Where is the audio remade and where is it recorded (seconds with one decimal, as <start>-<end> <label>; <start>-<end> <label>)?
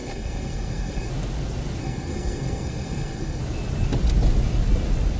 0.0-1.1 remade; 1.1-1.8 recorded; 1.8-3.4 remade; 3.4-5.2 recorded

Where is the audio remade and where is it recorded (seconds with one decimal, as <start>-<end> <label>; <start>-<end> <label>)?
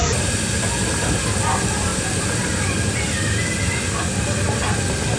0.0-5.2 recorded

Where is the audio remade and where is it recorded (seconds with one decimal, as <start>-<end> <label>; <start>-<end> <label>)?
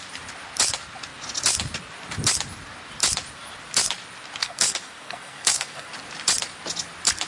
0.0-4.4 recorded; 4.4-5.9 remade; 5.9-7.3 recorded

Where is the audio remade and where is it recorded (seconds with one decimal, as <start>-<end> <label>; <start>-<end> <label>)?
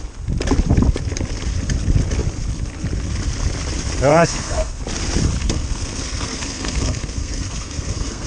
0.0-4.1 recorded; 4.1-4.8 remade; 4.8-5.4 recorded; 5.4-8.3 remade